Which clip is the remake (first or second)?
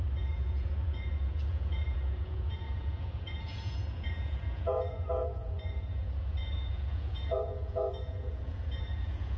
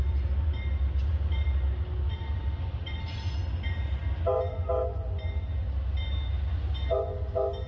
first